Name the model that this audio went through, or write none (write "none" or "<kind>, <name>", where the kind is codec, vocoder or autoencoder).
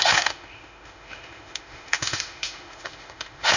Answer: autoencoder, DAC-VAE